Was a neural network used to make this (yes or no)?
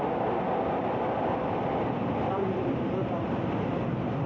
no